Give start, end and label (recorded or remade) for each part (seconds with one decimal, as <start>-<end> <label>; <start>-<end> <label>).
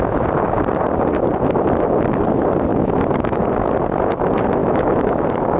0.0-2.7 recorded; 2.7-3.7 remade; 3.7-4.6 recorded; 4.6-5.6 remade